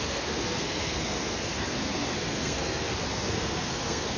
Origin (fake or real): fake